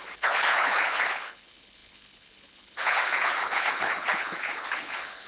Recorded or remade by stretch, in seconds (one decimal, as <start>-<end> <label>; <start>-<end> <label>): 0.0-5.3 remade